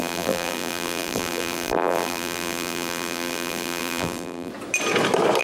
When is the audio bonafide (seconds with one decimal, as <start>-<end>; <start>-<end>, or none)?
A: 4.5-5.4